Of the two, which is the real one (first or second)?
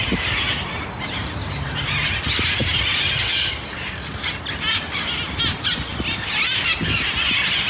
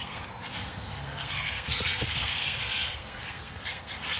first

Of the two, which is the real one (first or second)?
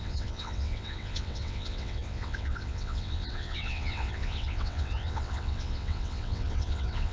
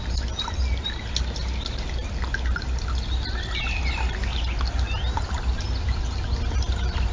second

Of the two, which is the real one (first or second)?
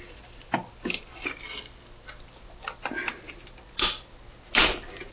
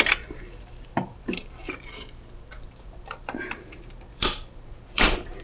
first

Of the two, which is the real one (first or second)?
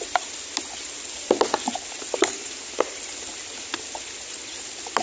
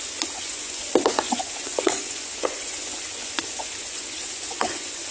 first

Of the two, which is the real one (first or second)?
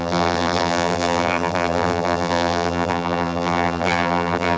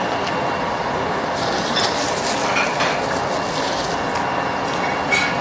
second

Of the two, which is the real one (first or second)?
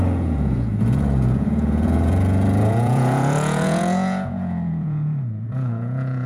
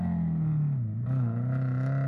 second